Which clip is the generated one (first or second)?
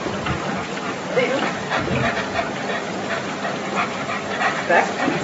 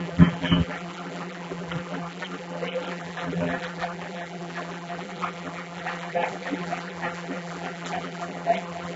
second